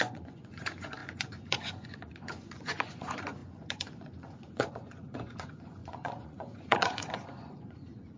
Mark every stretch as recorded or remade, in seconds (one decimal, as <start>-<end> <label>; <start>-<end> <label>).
0.0-8.2 remade